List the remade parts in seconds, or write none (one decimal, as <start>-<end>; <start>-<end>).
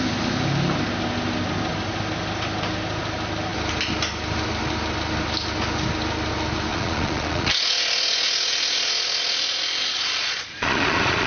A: 6.7-7.5; 9.8-11.3